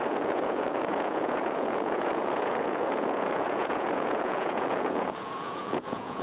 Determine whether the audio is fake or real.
fake